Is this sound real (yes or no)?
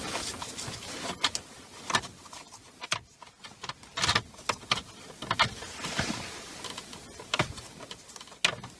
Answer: yes